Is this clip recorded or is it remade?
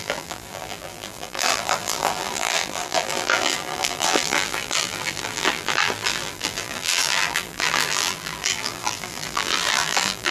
remade